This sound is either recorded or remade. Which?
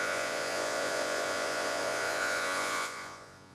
remade